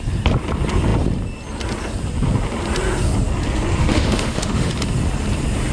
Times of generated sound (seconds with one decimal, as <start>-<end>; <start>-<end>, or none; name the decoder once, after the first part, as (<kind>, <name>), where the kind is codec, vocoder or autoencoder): 3.8-4.7 (autoencoder, DAC-VAE)